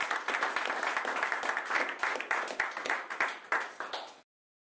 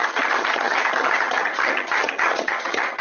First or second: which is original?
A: first